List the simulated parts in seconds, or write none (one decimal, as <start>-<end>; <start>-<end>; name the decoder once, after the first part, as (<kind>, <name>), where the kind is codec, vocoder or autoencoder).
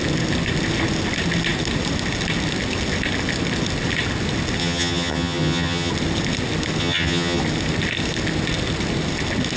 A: 4.6-5.9 (vocoder, HiFi-GAN); 6.8-7.4